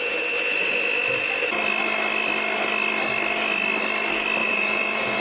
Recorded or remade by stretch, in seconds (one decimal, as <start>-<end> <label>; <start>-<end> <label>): 0.0-4.4 recorded; 4.4-5.2 remade